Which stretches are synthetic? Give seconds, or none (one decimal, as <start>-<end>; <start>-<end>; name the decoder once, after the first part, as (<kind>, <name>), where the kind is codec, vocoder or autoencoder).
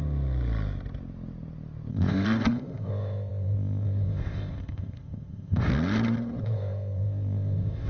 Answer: 1.9-5.7 (codec, ZipCodec); 6.4-7.9